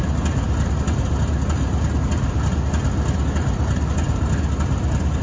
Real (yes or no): yes